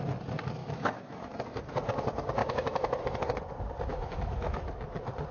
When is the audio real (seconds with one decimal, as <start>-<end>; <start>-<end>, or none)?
0.0-0.6; 1.3-2.4; 3.0-3.9; 4.6-5.3